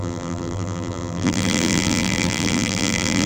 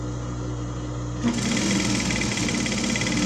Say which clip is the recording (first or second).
second